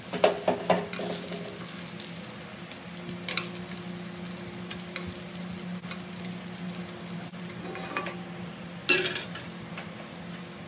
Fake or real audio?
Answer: real